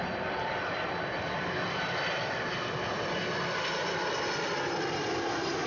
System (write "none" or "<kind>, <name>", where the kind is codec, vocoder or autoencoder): vocoder, BigVGAN v2